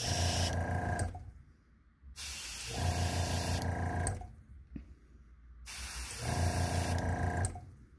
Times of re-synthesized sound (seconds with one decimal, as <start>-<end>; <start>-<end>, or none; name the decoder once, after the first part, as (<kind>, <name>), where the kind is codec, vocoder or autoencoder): 0.5-2.9 (vocoder, BigVGAN v2)